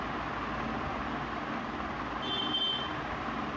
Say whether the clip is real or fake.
real